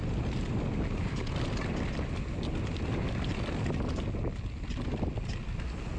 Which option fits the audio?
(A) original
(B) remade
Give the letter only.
A